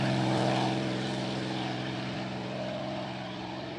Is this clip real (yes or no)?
no